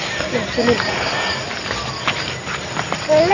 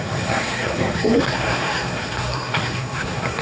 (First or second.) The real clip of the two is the first